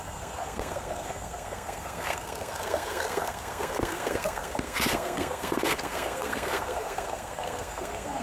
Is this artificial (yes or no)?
yes